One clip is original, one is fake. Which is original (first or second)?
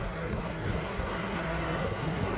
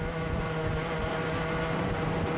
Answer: second